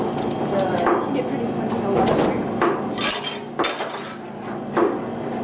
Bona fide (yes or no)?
yes